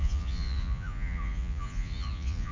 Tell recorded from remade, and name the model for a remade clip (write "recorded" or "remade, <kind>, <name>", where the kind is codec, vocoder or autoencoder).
remade, vocoder, Vocos